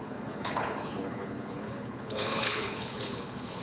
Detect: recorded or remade remade